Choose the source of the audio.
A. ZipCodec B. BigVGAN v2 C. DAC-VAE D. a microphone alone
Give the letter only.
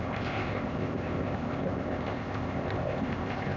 A